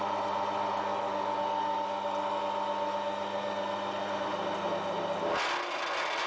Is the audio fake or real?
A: real